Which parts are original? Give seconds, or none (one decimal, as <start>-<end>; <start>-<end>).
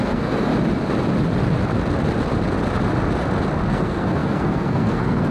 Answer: 0.5-3.7